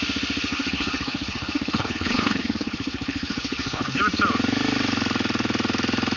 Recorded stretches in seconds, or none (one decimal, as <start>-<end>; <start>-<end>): 0.0-0.5; 4.0-6.2